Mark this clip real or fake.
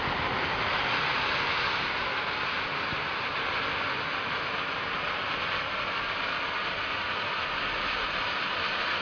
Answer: real